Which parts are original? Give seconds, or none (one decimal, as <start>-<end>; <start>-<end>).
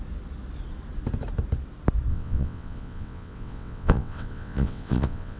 0.0-2.1